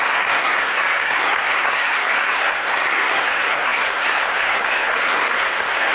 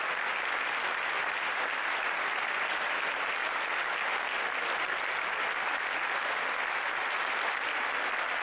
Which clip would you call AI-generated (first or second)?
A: first